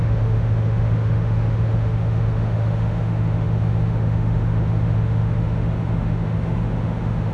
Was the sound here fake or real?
fake